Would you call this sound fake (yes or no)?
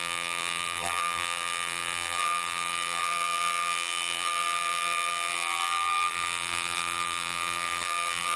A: yes